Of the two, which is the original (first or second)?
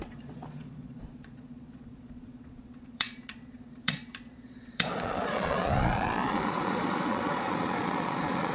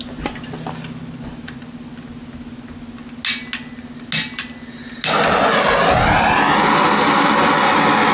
second